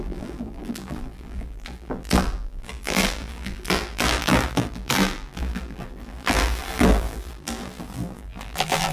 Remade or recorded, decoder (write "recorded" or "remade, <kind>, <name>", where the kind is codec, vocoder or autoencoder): remade, vocoder, BigVGAN v2